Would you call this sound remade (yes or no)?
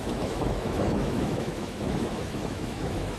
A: yes